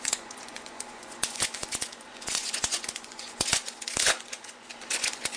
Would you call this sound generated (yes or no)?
yes